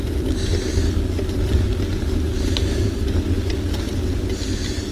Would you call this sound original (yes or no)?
yes